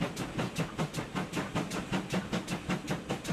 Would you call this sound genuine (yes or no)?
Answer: yes